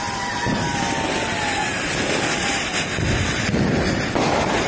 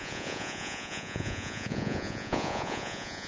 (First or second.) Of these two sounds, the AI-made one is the second